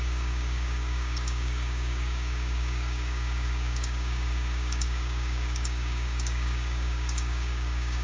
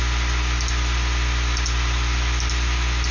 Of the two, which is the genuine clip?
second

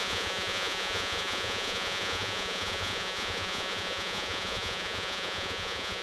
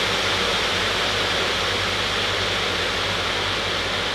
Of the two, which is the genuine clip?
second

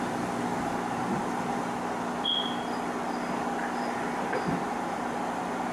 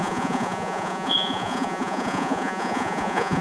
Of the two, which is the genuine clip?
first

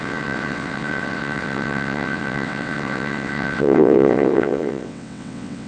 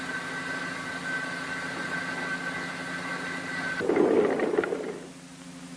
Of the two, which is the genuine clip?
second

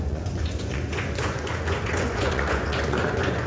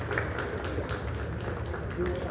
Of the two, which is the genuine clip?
second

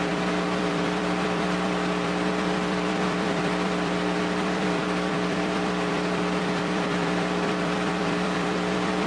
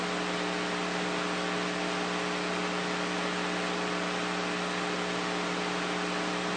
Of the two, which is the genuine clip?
second